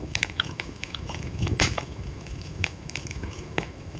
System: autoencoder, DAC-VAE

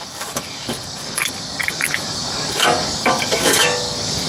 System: codec, DAC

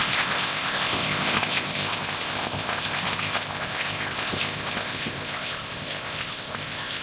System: codec, ZipCodec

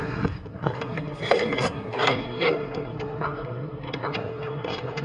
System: codec, SNAC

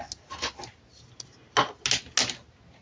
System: none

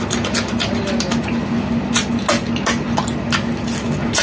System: none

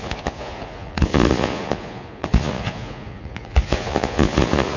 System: vocoder, Vocos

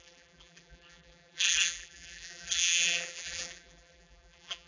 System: vocoder, BigVGAN v2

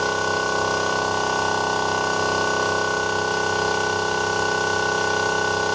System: none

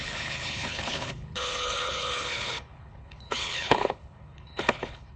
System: codec, HILCodec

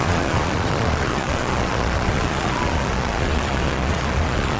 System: vocoder, Vocos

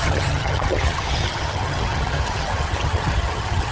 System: vocoder, HiFi-GAN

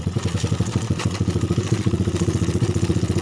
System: vocoder, Vocos